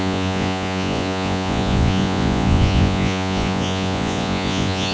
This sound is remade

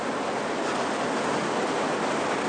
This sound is recorded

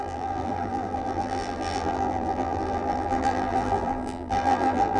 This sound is remade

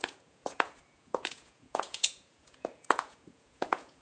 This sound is remade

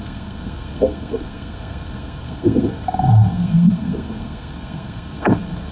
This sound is remade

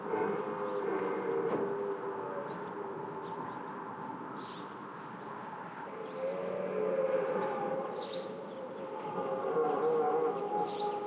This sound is recorded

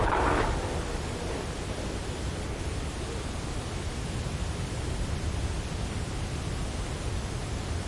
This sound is recorded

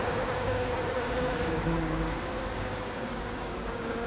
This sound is remade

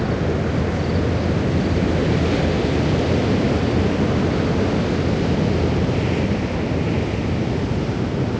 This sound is recorded